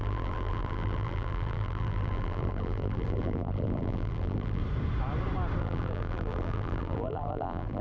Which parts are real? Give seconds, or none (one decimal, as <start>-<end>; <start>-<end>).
4.6-5.6